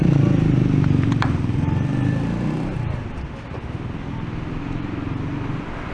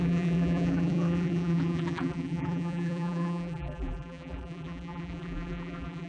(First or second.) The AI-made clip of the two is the second